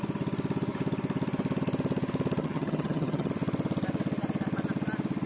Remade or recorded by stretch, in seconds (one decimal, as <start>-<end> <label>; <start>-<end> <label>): 0.0-2.4 recorded; 2.4-3.3 remade; 3.3-5.3 recorded